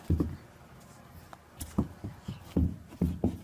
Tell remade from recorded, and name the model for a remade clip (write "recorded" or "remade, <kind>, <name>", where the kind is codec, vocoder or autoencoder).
recorded